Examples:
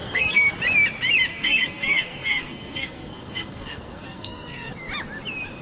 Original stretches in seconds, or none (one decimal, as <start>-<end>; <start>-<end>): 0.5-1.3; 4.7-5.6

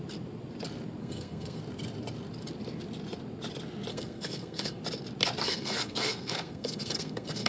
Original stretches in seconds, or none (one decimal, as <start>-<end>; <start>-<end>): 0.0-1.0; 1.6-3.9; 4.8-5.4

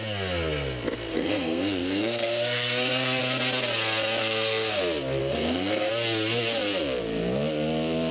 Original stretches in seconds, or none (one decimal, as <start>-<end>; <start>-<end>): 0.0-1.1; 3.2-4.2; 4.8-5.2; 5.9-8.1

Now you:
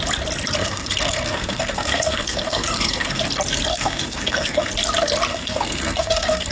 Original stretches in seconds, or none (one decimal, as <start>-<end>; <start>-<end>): 0.0-0.6; 3.2-3.7; 4.7-5.3

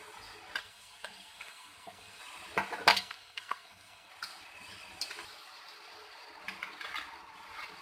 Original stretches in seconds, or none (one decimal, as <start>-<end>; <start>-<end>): 0.0-0.6; 2.2-2.9; 4.1-7.8